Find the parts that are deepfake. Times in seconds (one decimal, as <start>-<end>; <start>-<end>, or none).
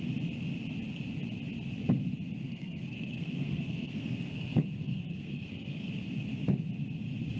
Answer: 2.4-5.9